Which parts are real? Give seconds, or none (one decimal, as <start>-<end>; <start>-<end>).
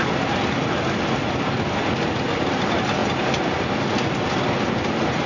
0.0-5.3